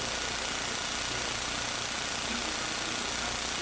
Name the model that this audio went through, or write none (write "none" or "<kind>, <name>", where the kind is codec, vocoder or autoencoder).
none